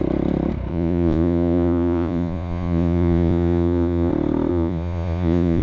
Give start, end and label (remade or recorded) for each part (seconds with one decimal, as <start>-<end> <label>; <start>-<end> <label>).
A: 0.0-0.7 recorded; 0.7-4.1 remade; 4.1-4.5 recorded; 4.5-5.6 remade